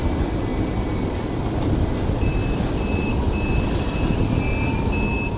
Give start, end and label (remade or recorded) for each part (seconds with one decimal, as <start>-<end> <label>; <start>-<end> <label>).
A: 0.0-0.5 recorded; 0.5-3.1 remade; 3.1-5.4 recorded

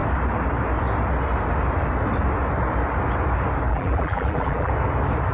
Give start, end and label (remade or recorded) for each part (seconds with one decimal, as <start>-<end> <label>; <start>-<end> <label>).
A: 0.0-3.7 recorded; 3.7-4.7 remade; 4.7-5.3 recorded